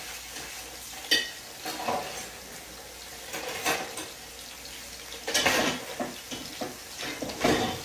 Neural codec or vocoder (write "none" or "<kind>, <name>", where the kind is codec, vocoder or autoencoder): none